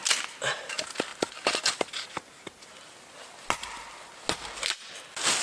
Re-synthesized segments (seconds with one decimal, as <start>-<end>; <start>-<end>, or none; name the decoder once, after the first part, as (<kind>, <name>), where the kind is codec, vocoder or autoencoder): none

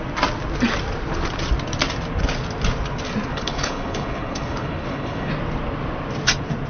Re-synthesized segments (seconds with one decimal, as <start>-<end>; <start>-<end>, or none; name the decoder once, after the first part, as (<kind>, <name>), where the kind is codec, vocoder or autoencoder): 3.3-5.3 (codec, HILCodec)

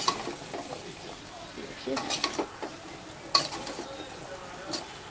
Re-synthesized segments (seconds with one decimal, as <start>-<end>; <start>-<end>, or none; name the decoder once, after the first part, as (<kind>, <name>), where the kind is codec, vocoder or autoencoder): none

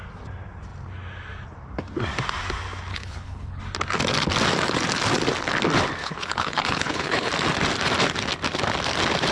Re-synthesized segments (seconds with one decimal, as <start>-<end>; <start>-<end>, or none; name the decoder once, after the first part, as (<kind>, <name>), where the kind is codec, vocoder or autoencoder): 2.9-3.6 (codec, HILCodec); 6.0-7.3

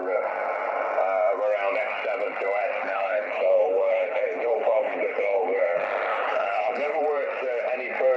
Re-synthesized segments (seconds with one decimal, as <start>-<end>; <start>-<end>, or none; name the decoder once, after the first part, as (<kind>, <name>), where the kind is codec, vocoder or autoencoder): 2.8-5.6 (codec, HILCodec); 6.1-7.0

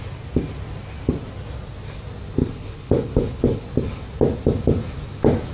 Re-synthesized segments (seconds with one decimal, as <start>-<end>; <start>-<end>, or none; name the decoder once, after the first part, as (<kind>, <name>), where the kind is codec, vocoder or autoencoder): 2.4-3.6 (codec, HILCodec)

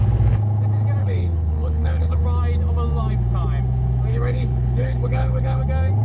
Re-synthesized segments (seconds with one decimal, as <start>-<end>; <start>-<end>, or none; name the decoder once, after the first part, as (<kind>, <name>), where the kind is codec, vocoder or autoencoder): 1.0-2.2 (codec, HILCodec); 4.1-5.6

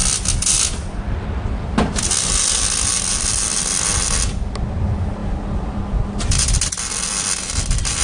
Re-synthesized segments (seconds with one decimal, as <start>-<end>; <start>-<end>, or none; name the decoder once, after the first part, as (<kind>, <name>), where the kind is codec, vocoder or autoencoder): none